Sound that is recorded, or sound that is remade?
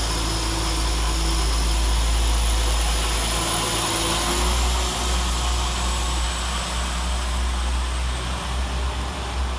recorded